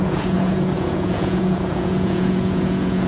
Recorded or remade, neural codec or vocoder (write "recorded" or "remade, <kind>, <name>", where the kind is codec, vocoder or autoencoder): remade, vocoder, Vocos